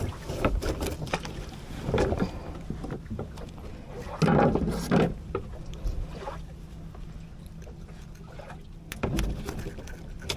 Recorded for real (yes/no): yes